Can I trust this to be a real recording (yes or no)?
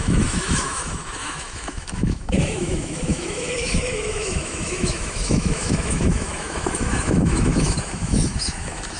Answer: no